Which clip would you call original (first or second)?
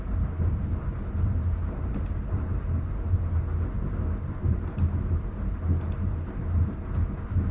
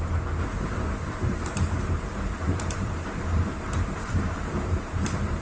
first